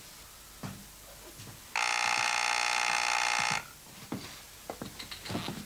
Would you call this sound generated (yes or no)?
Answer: no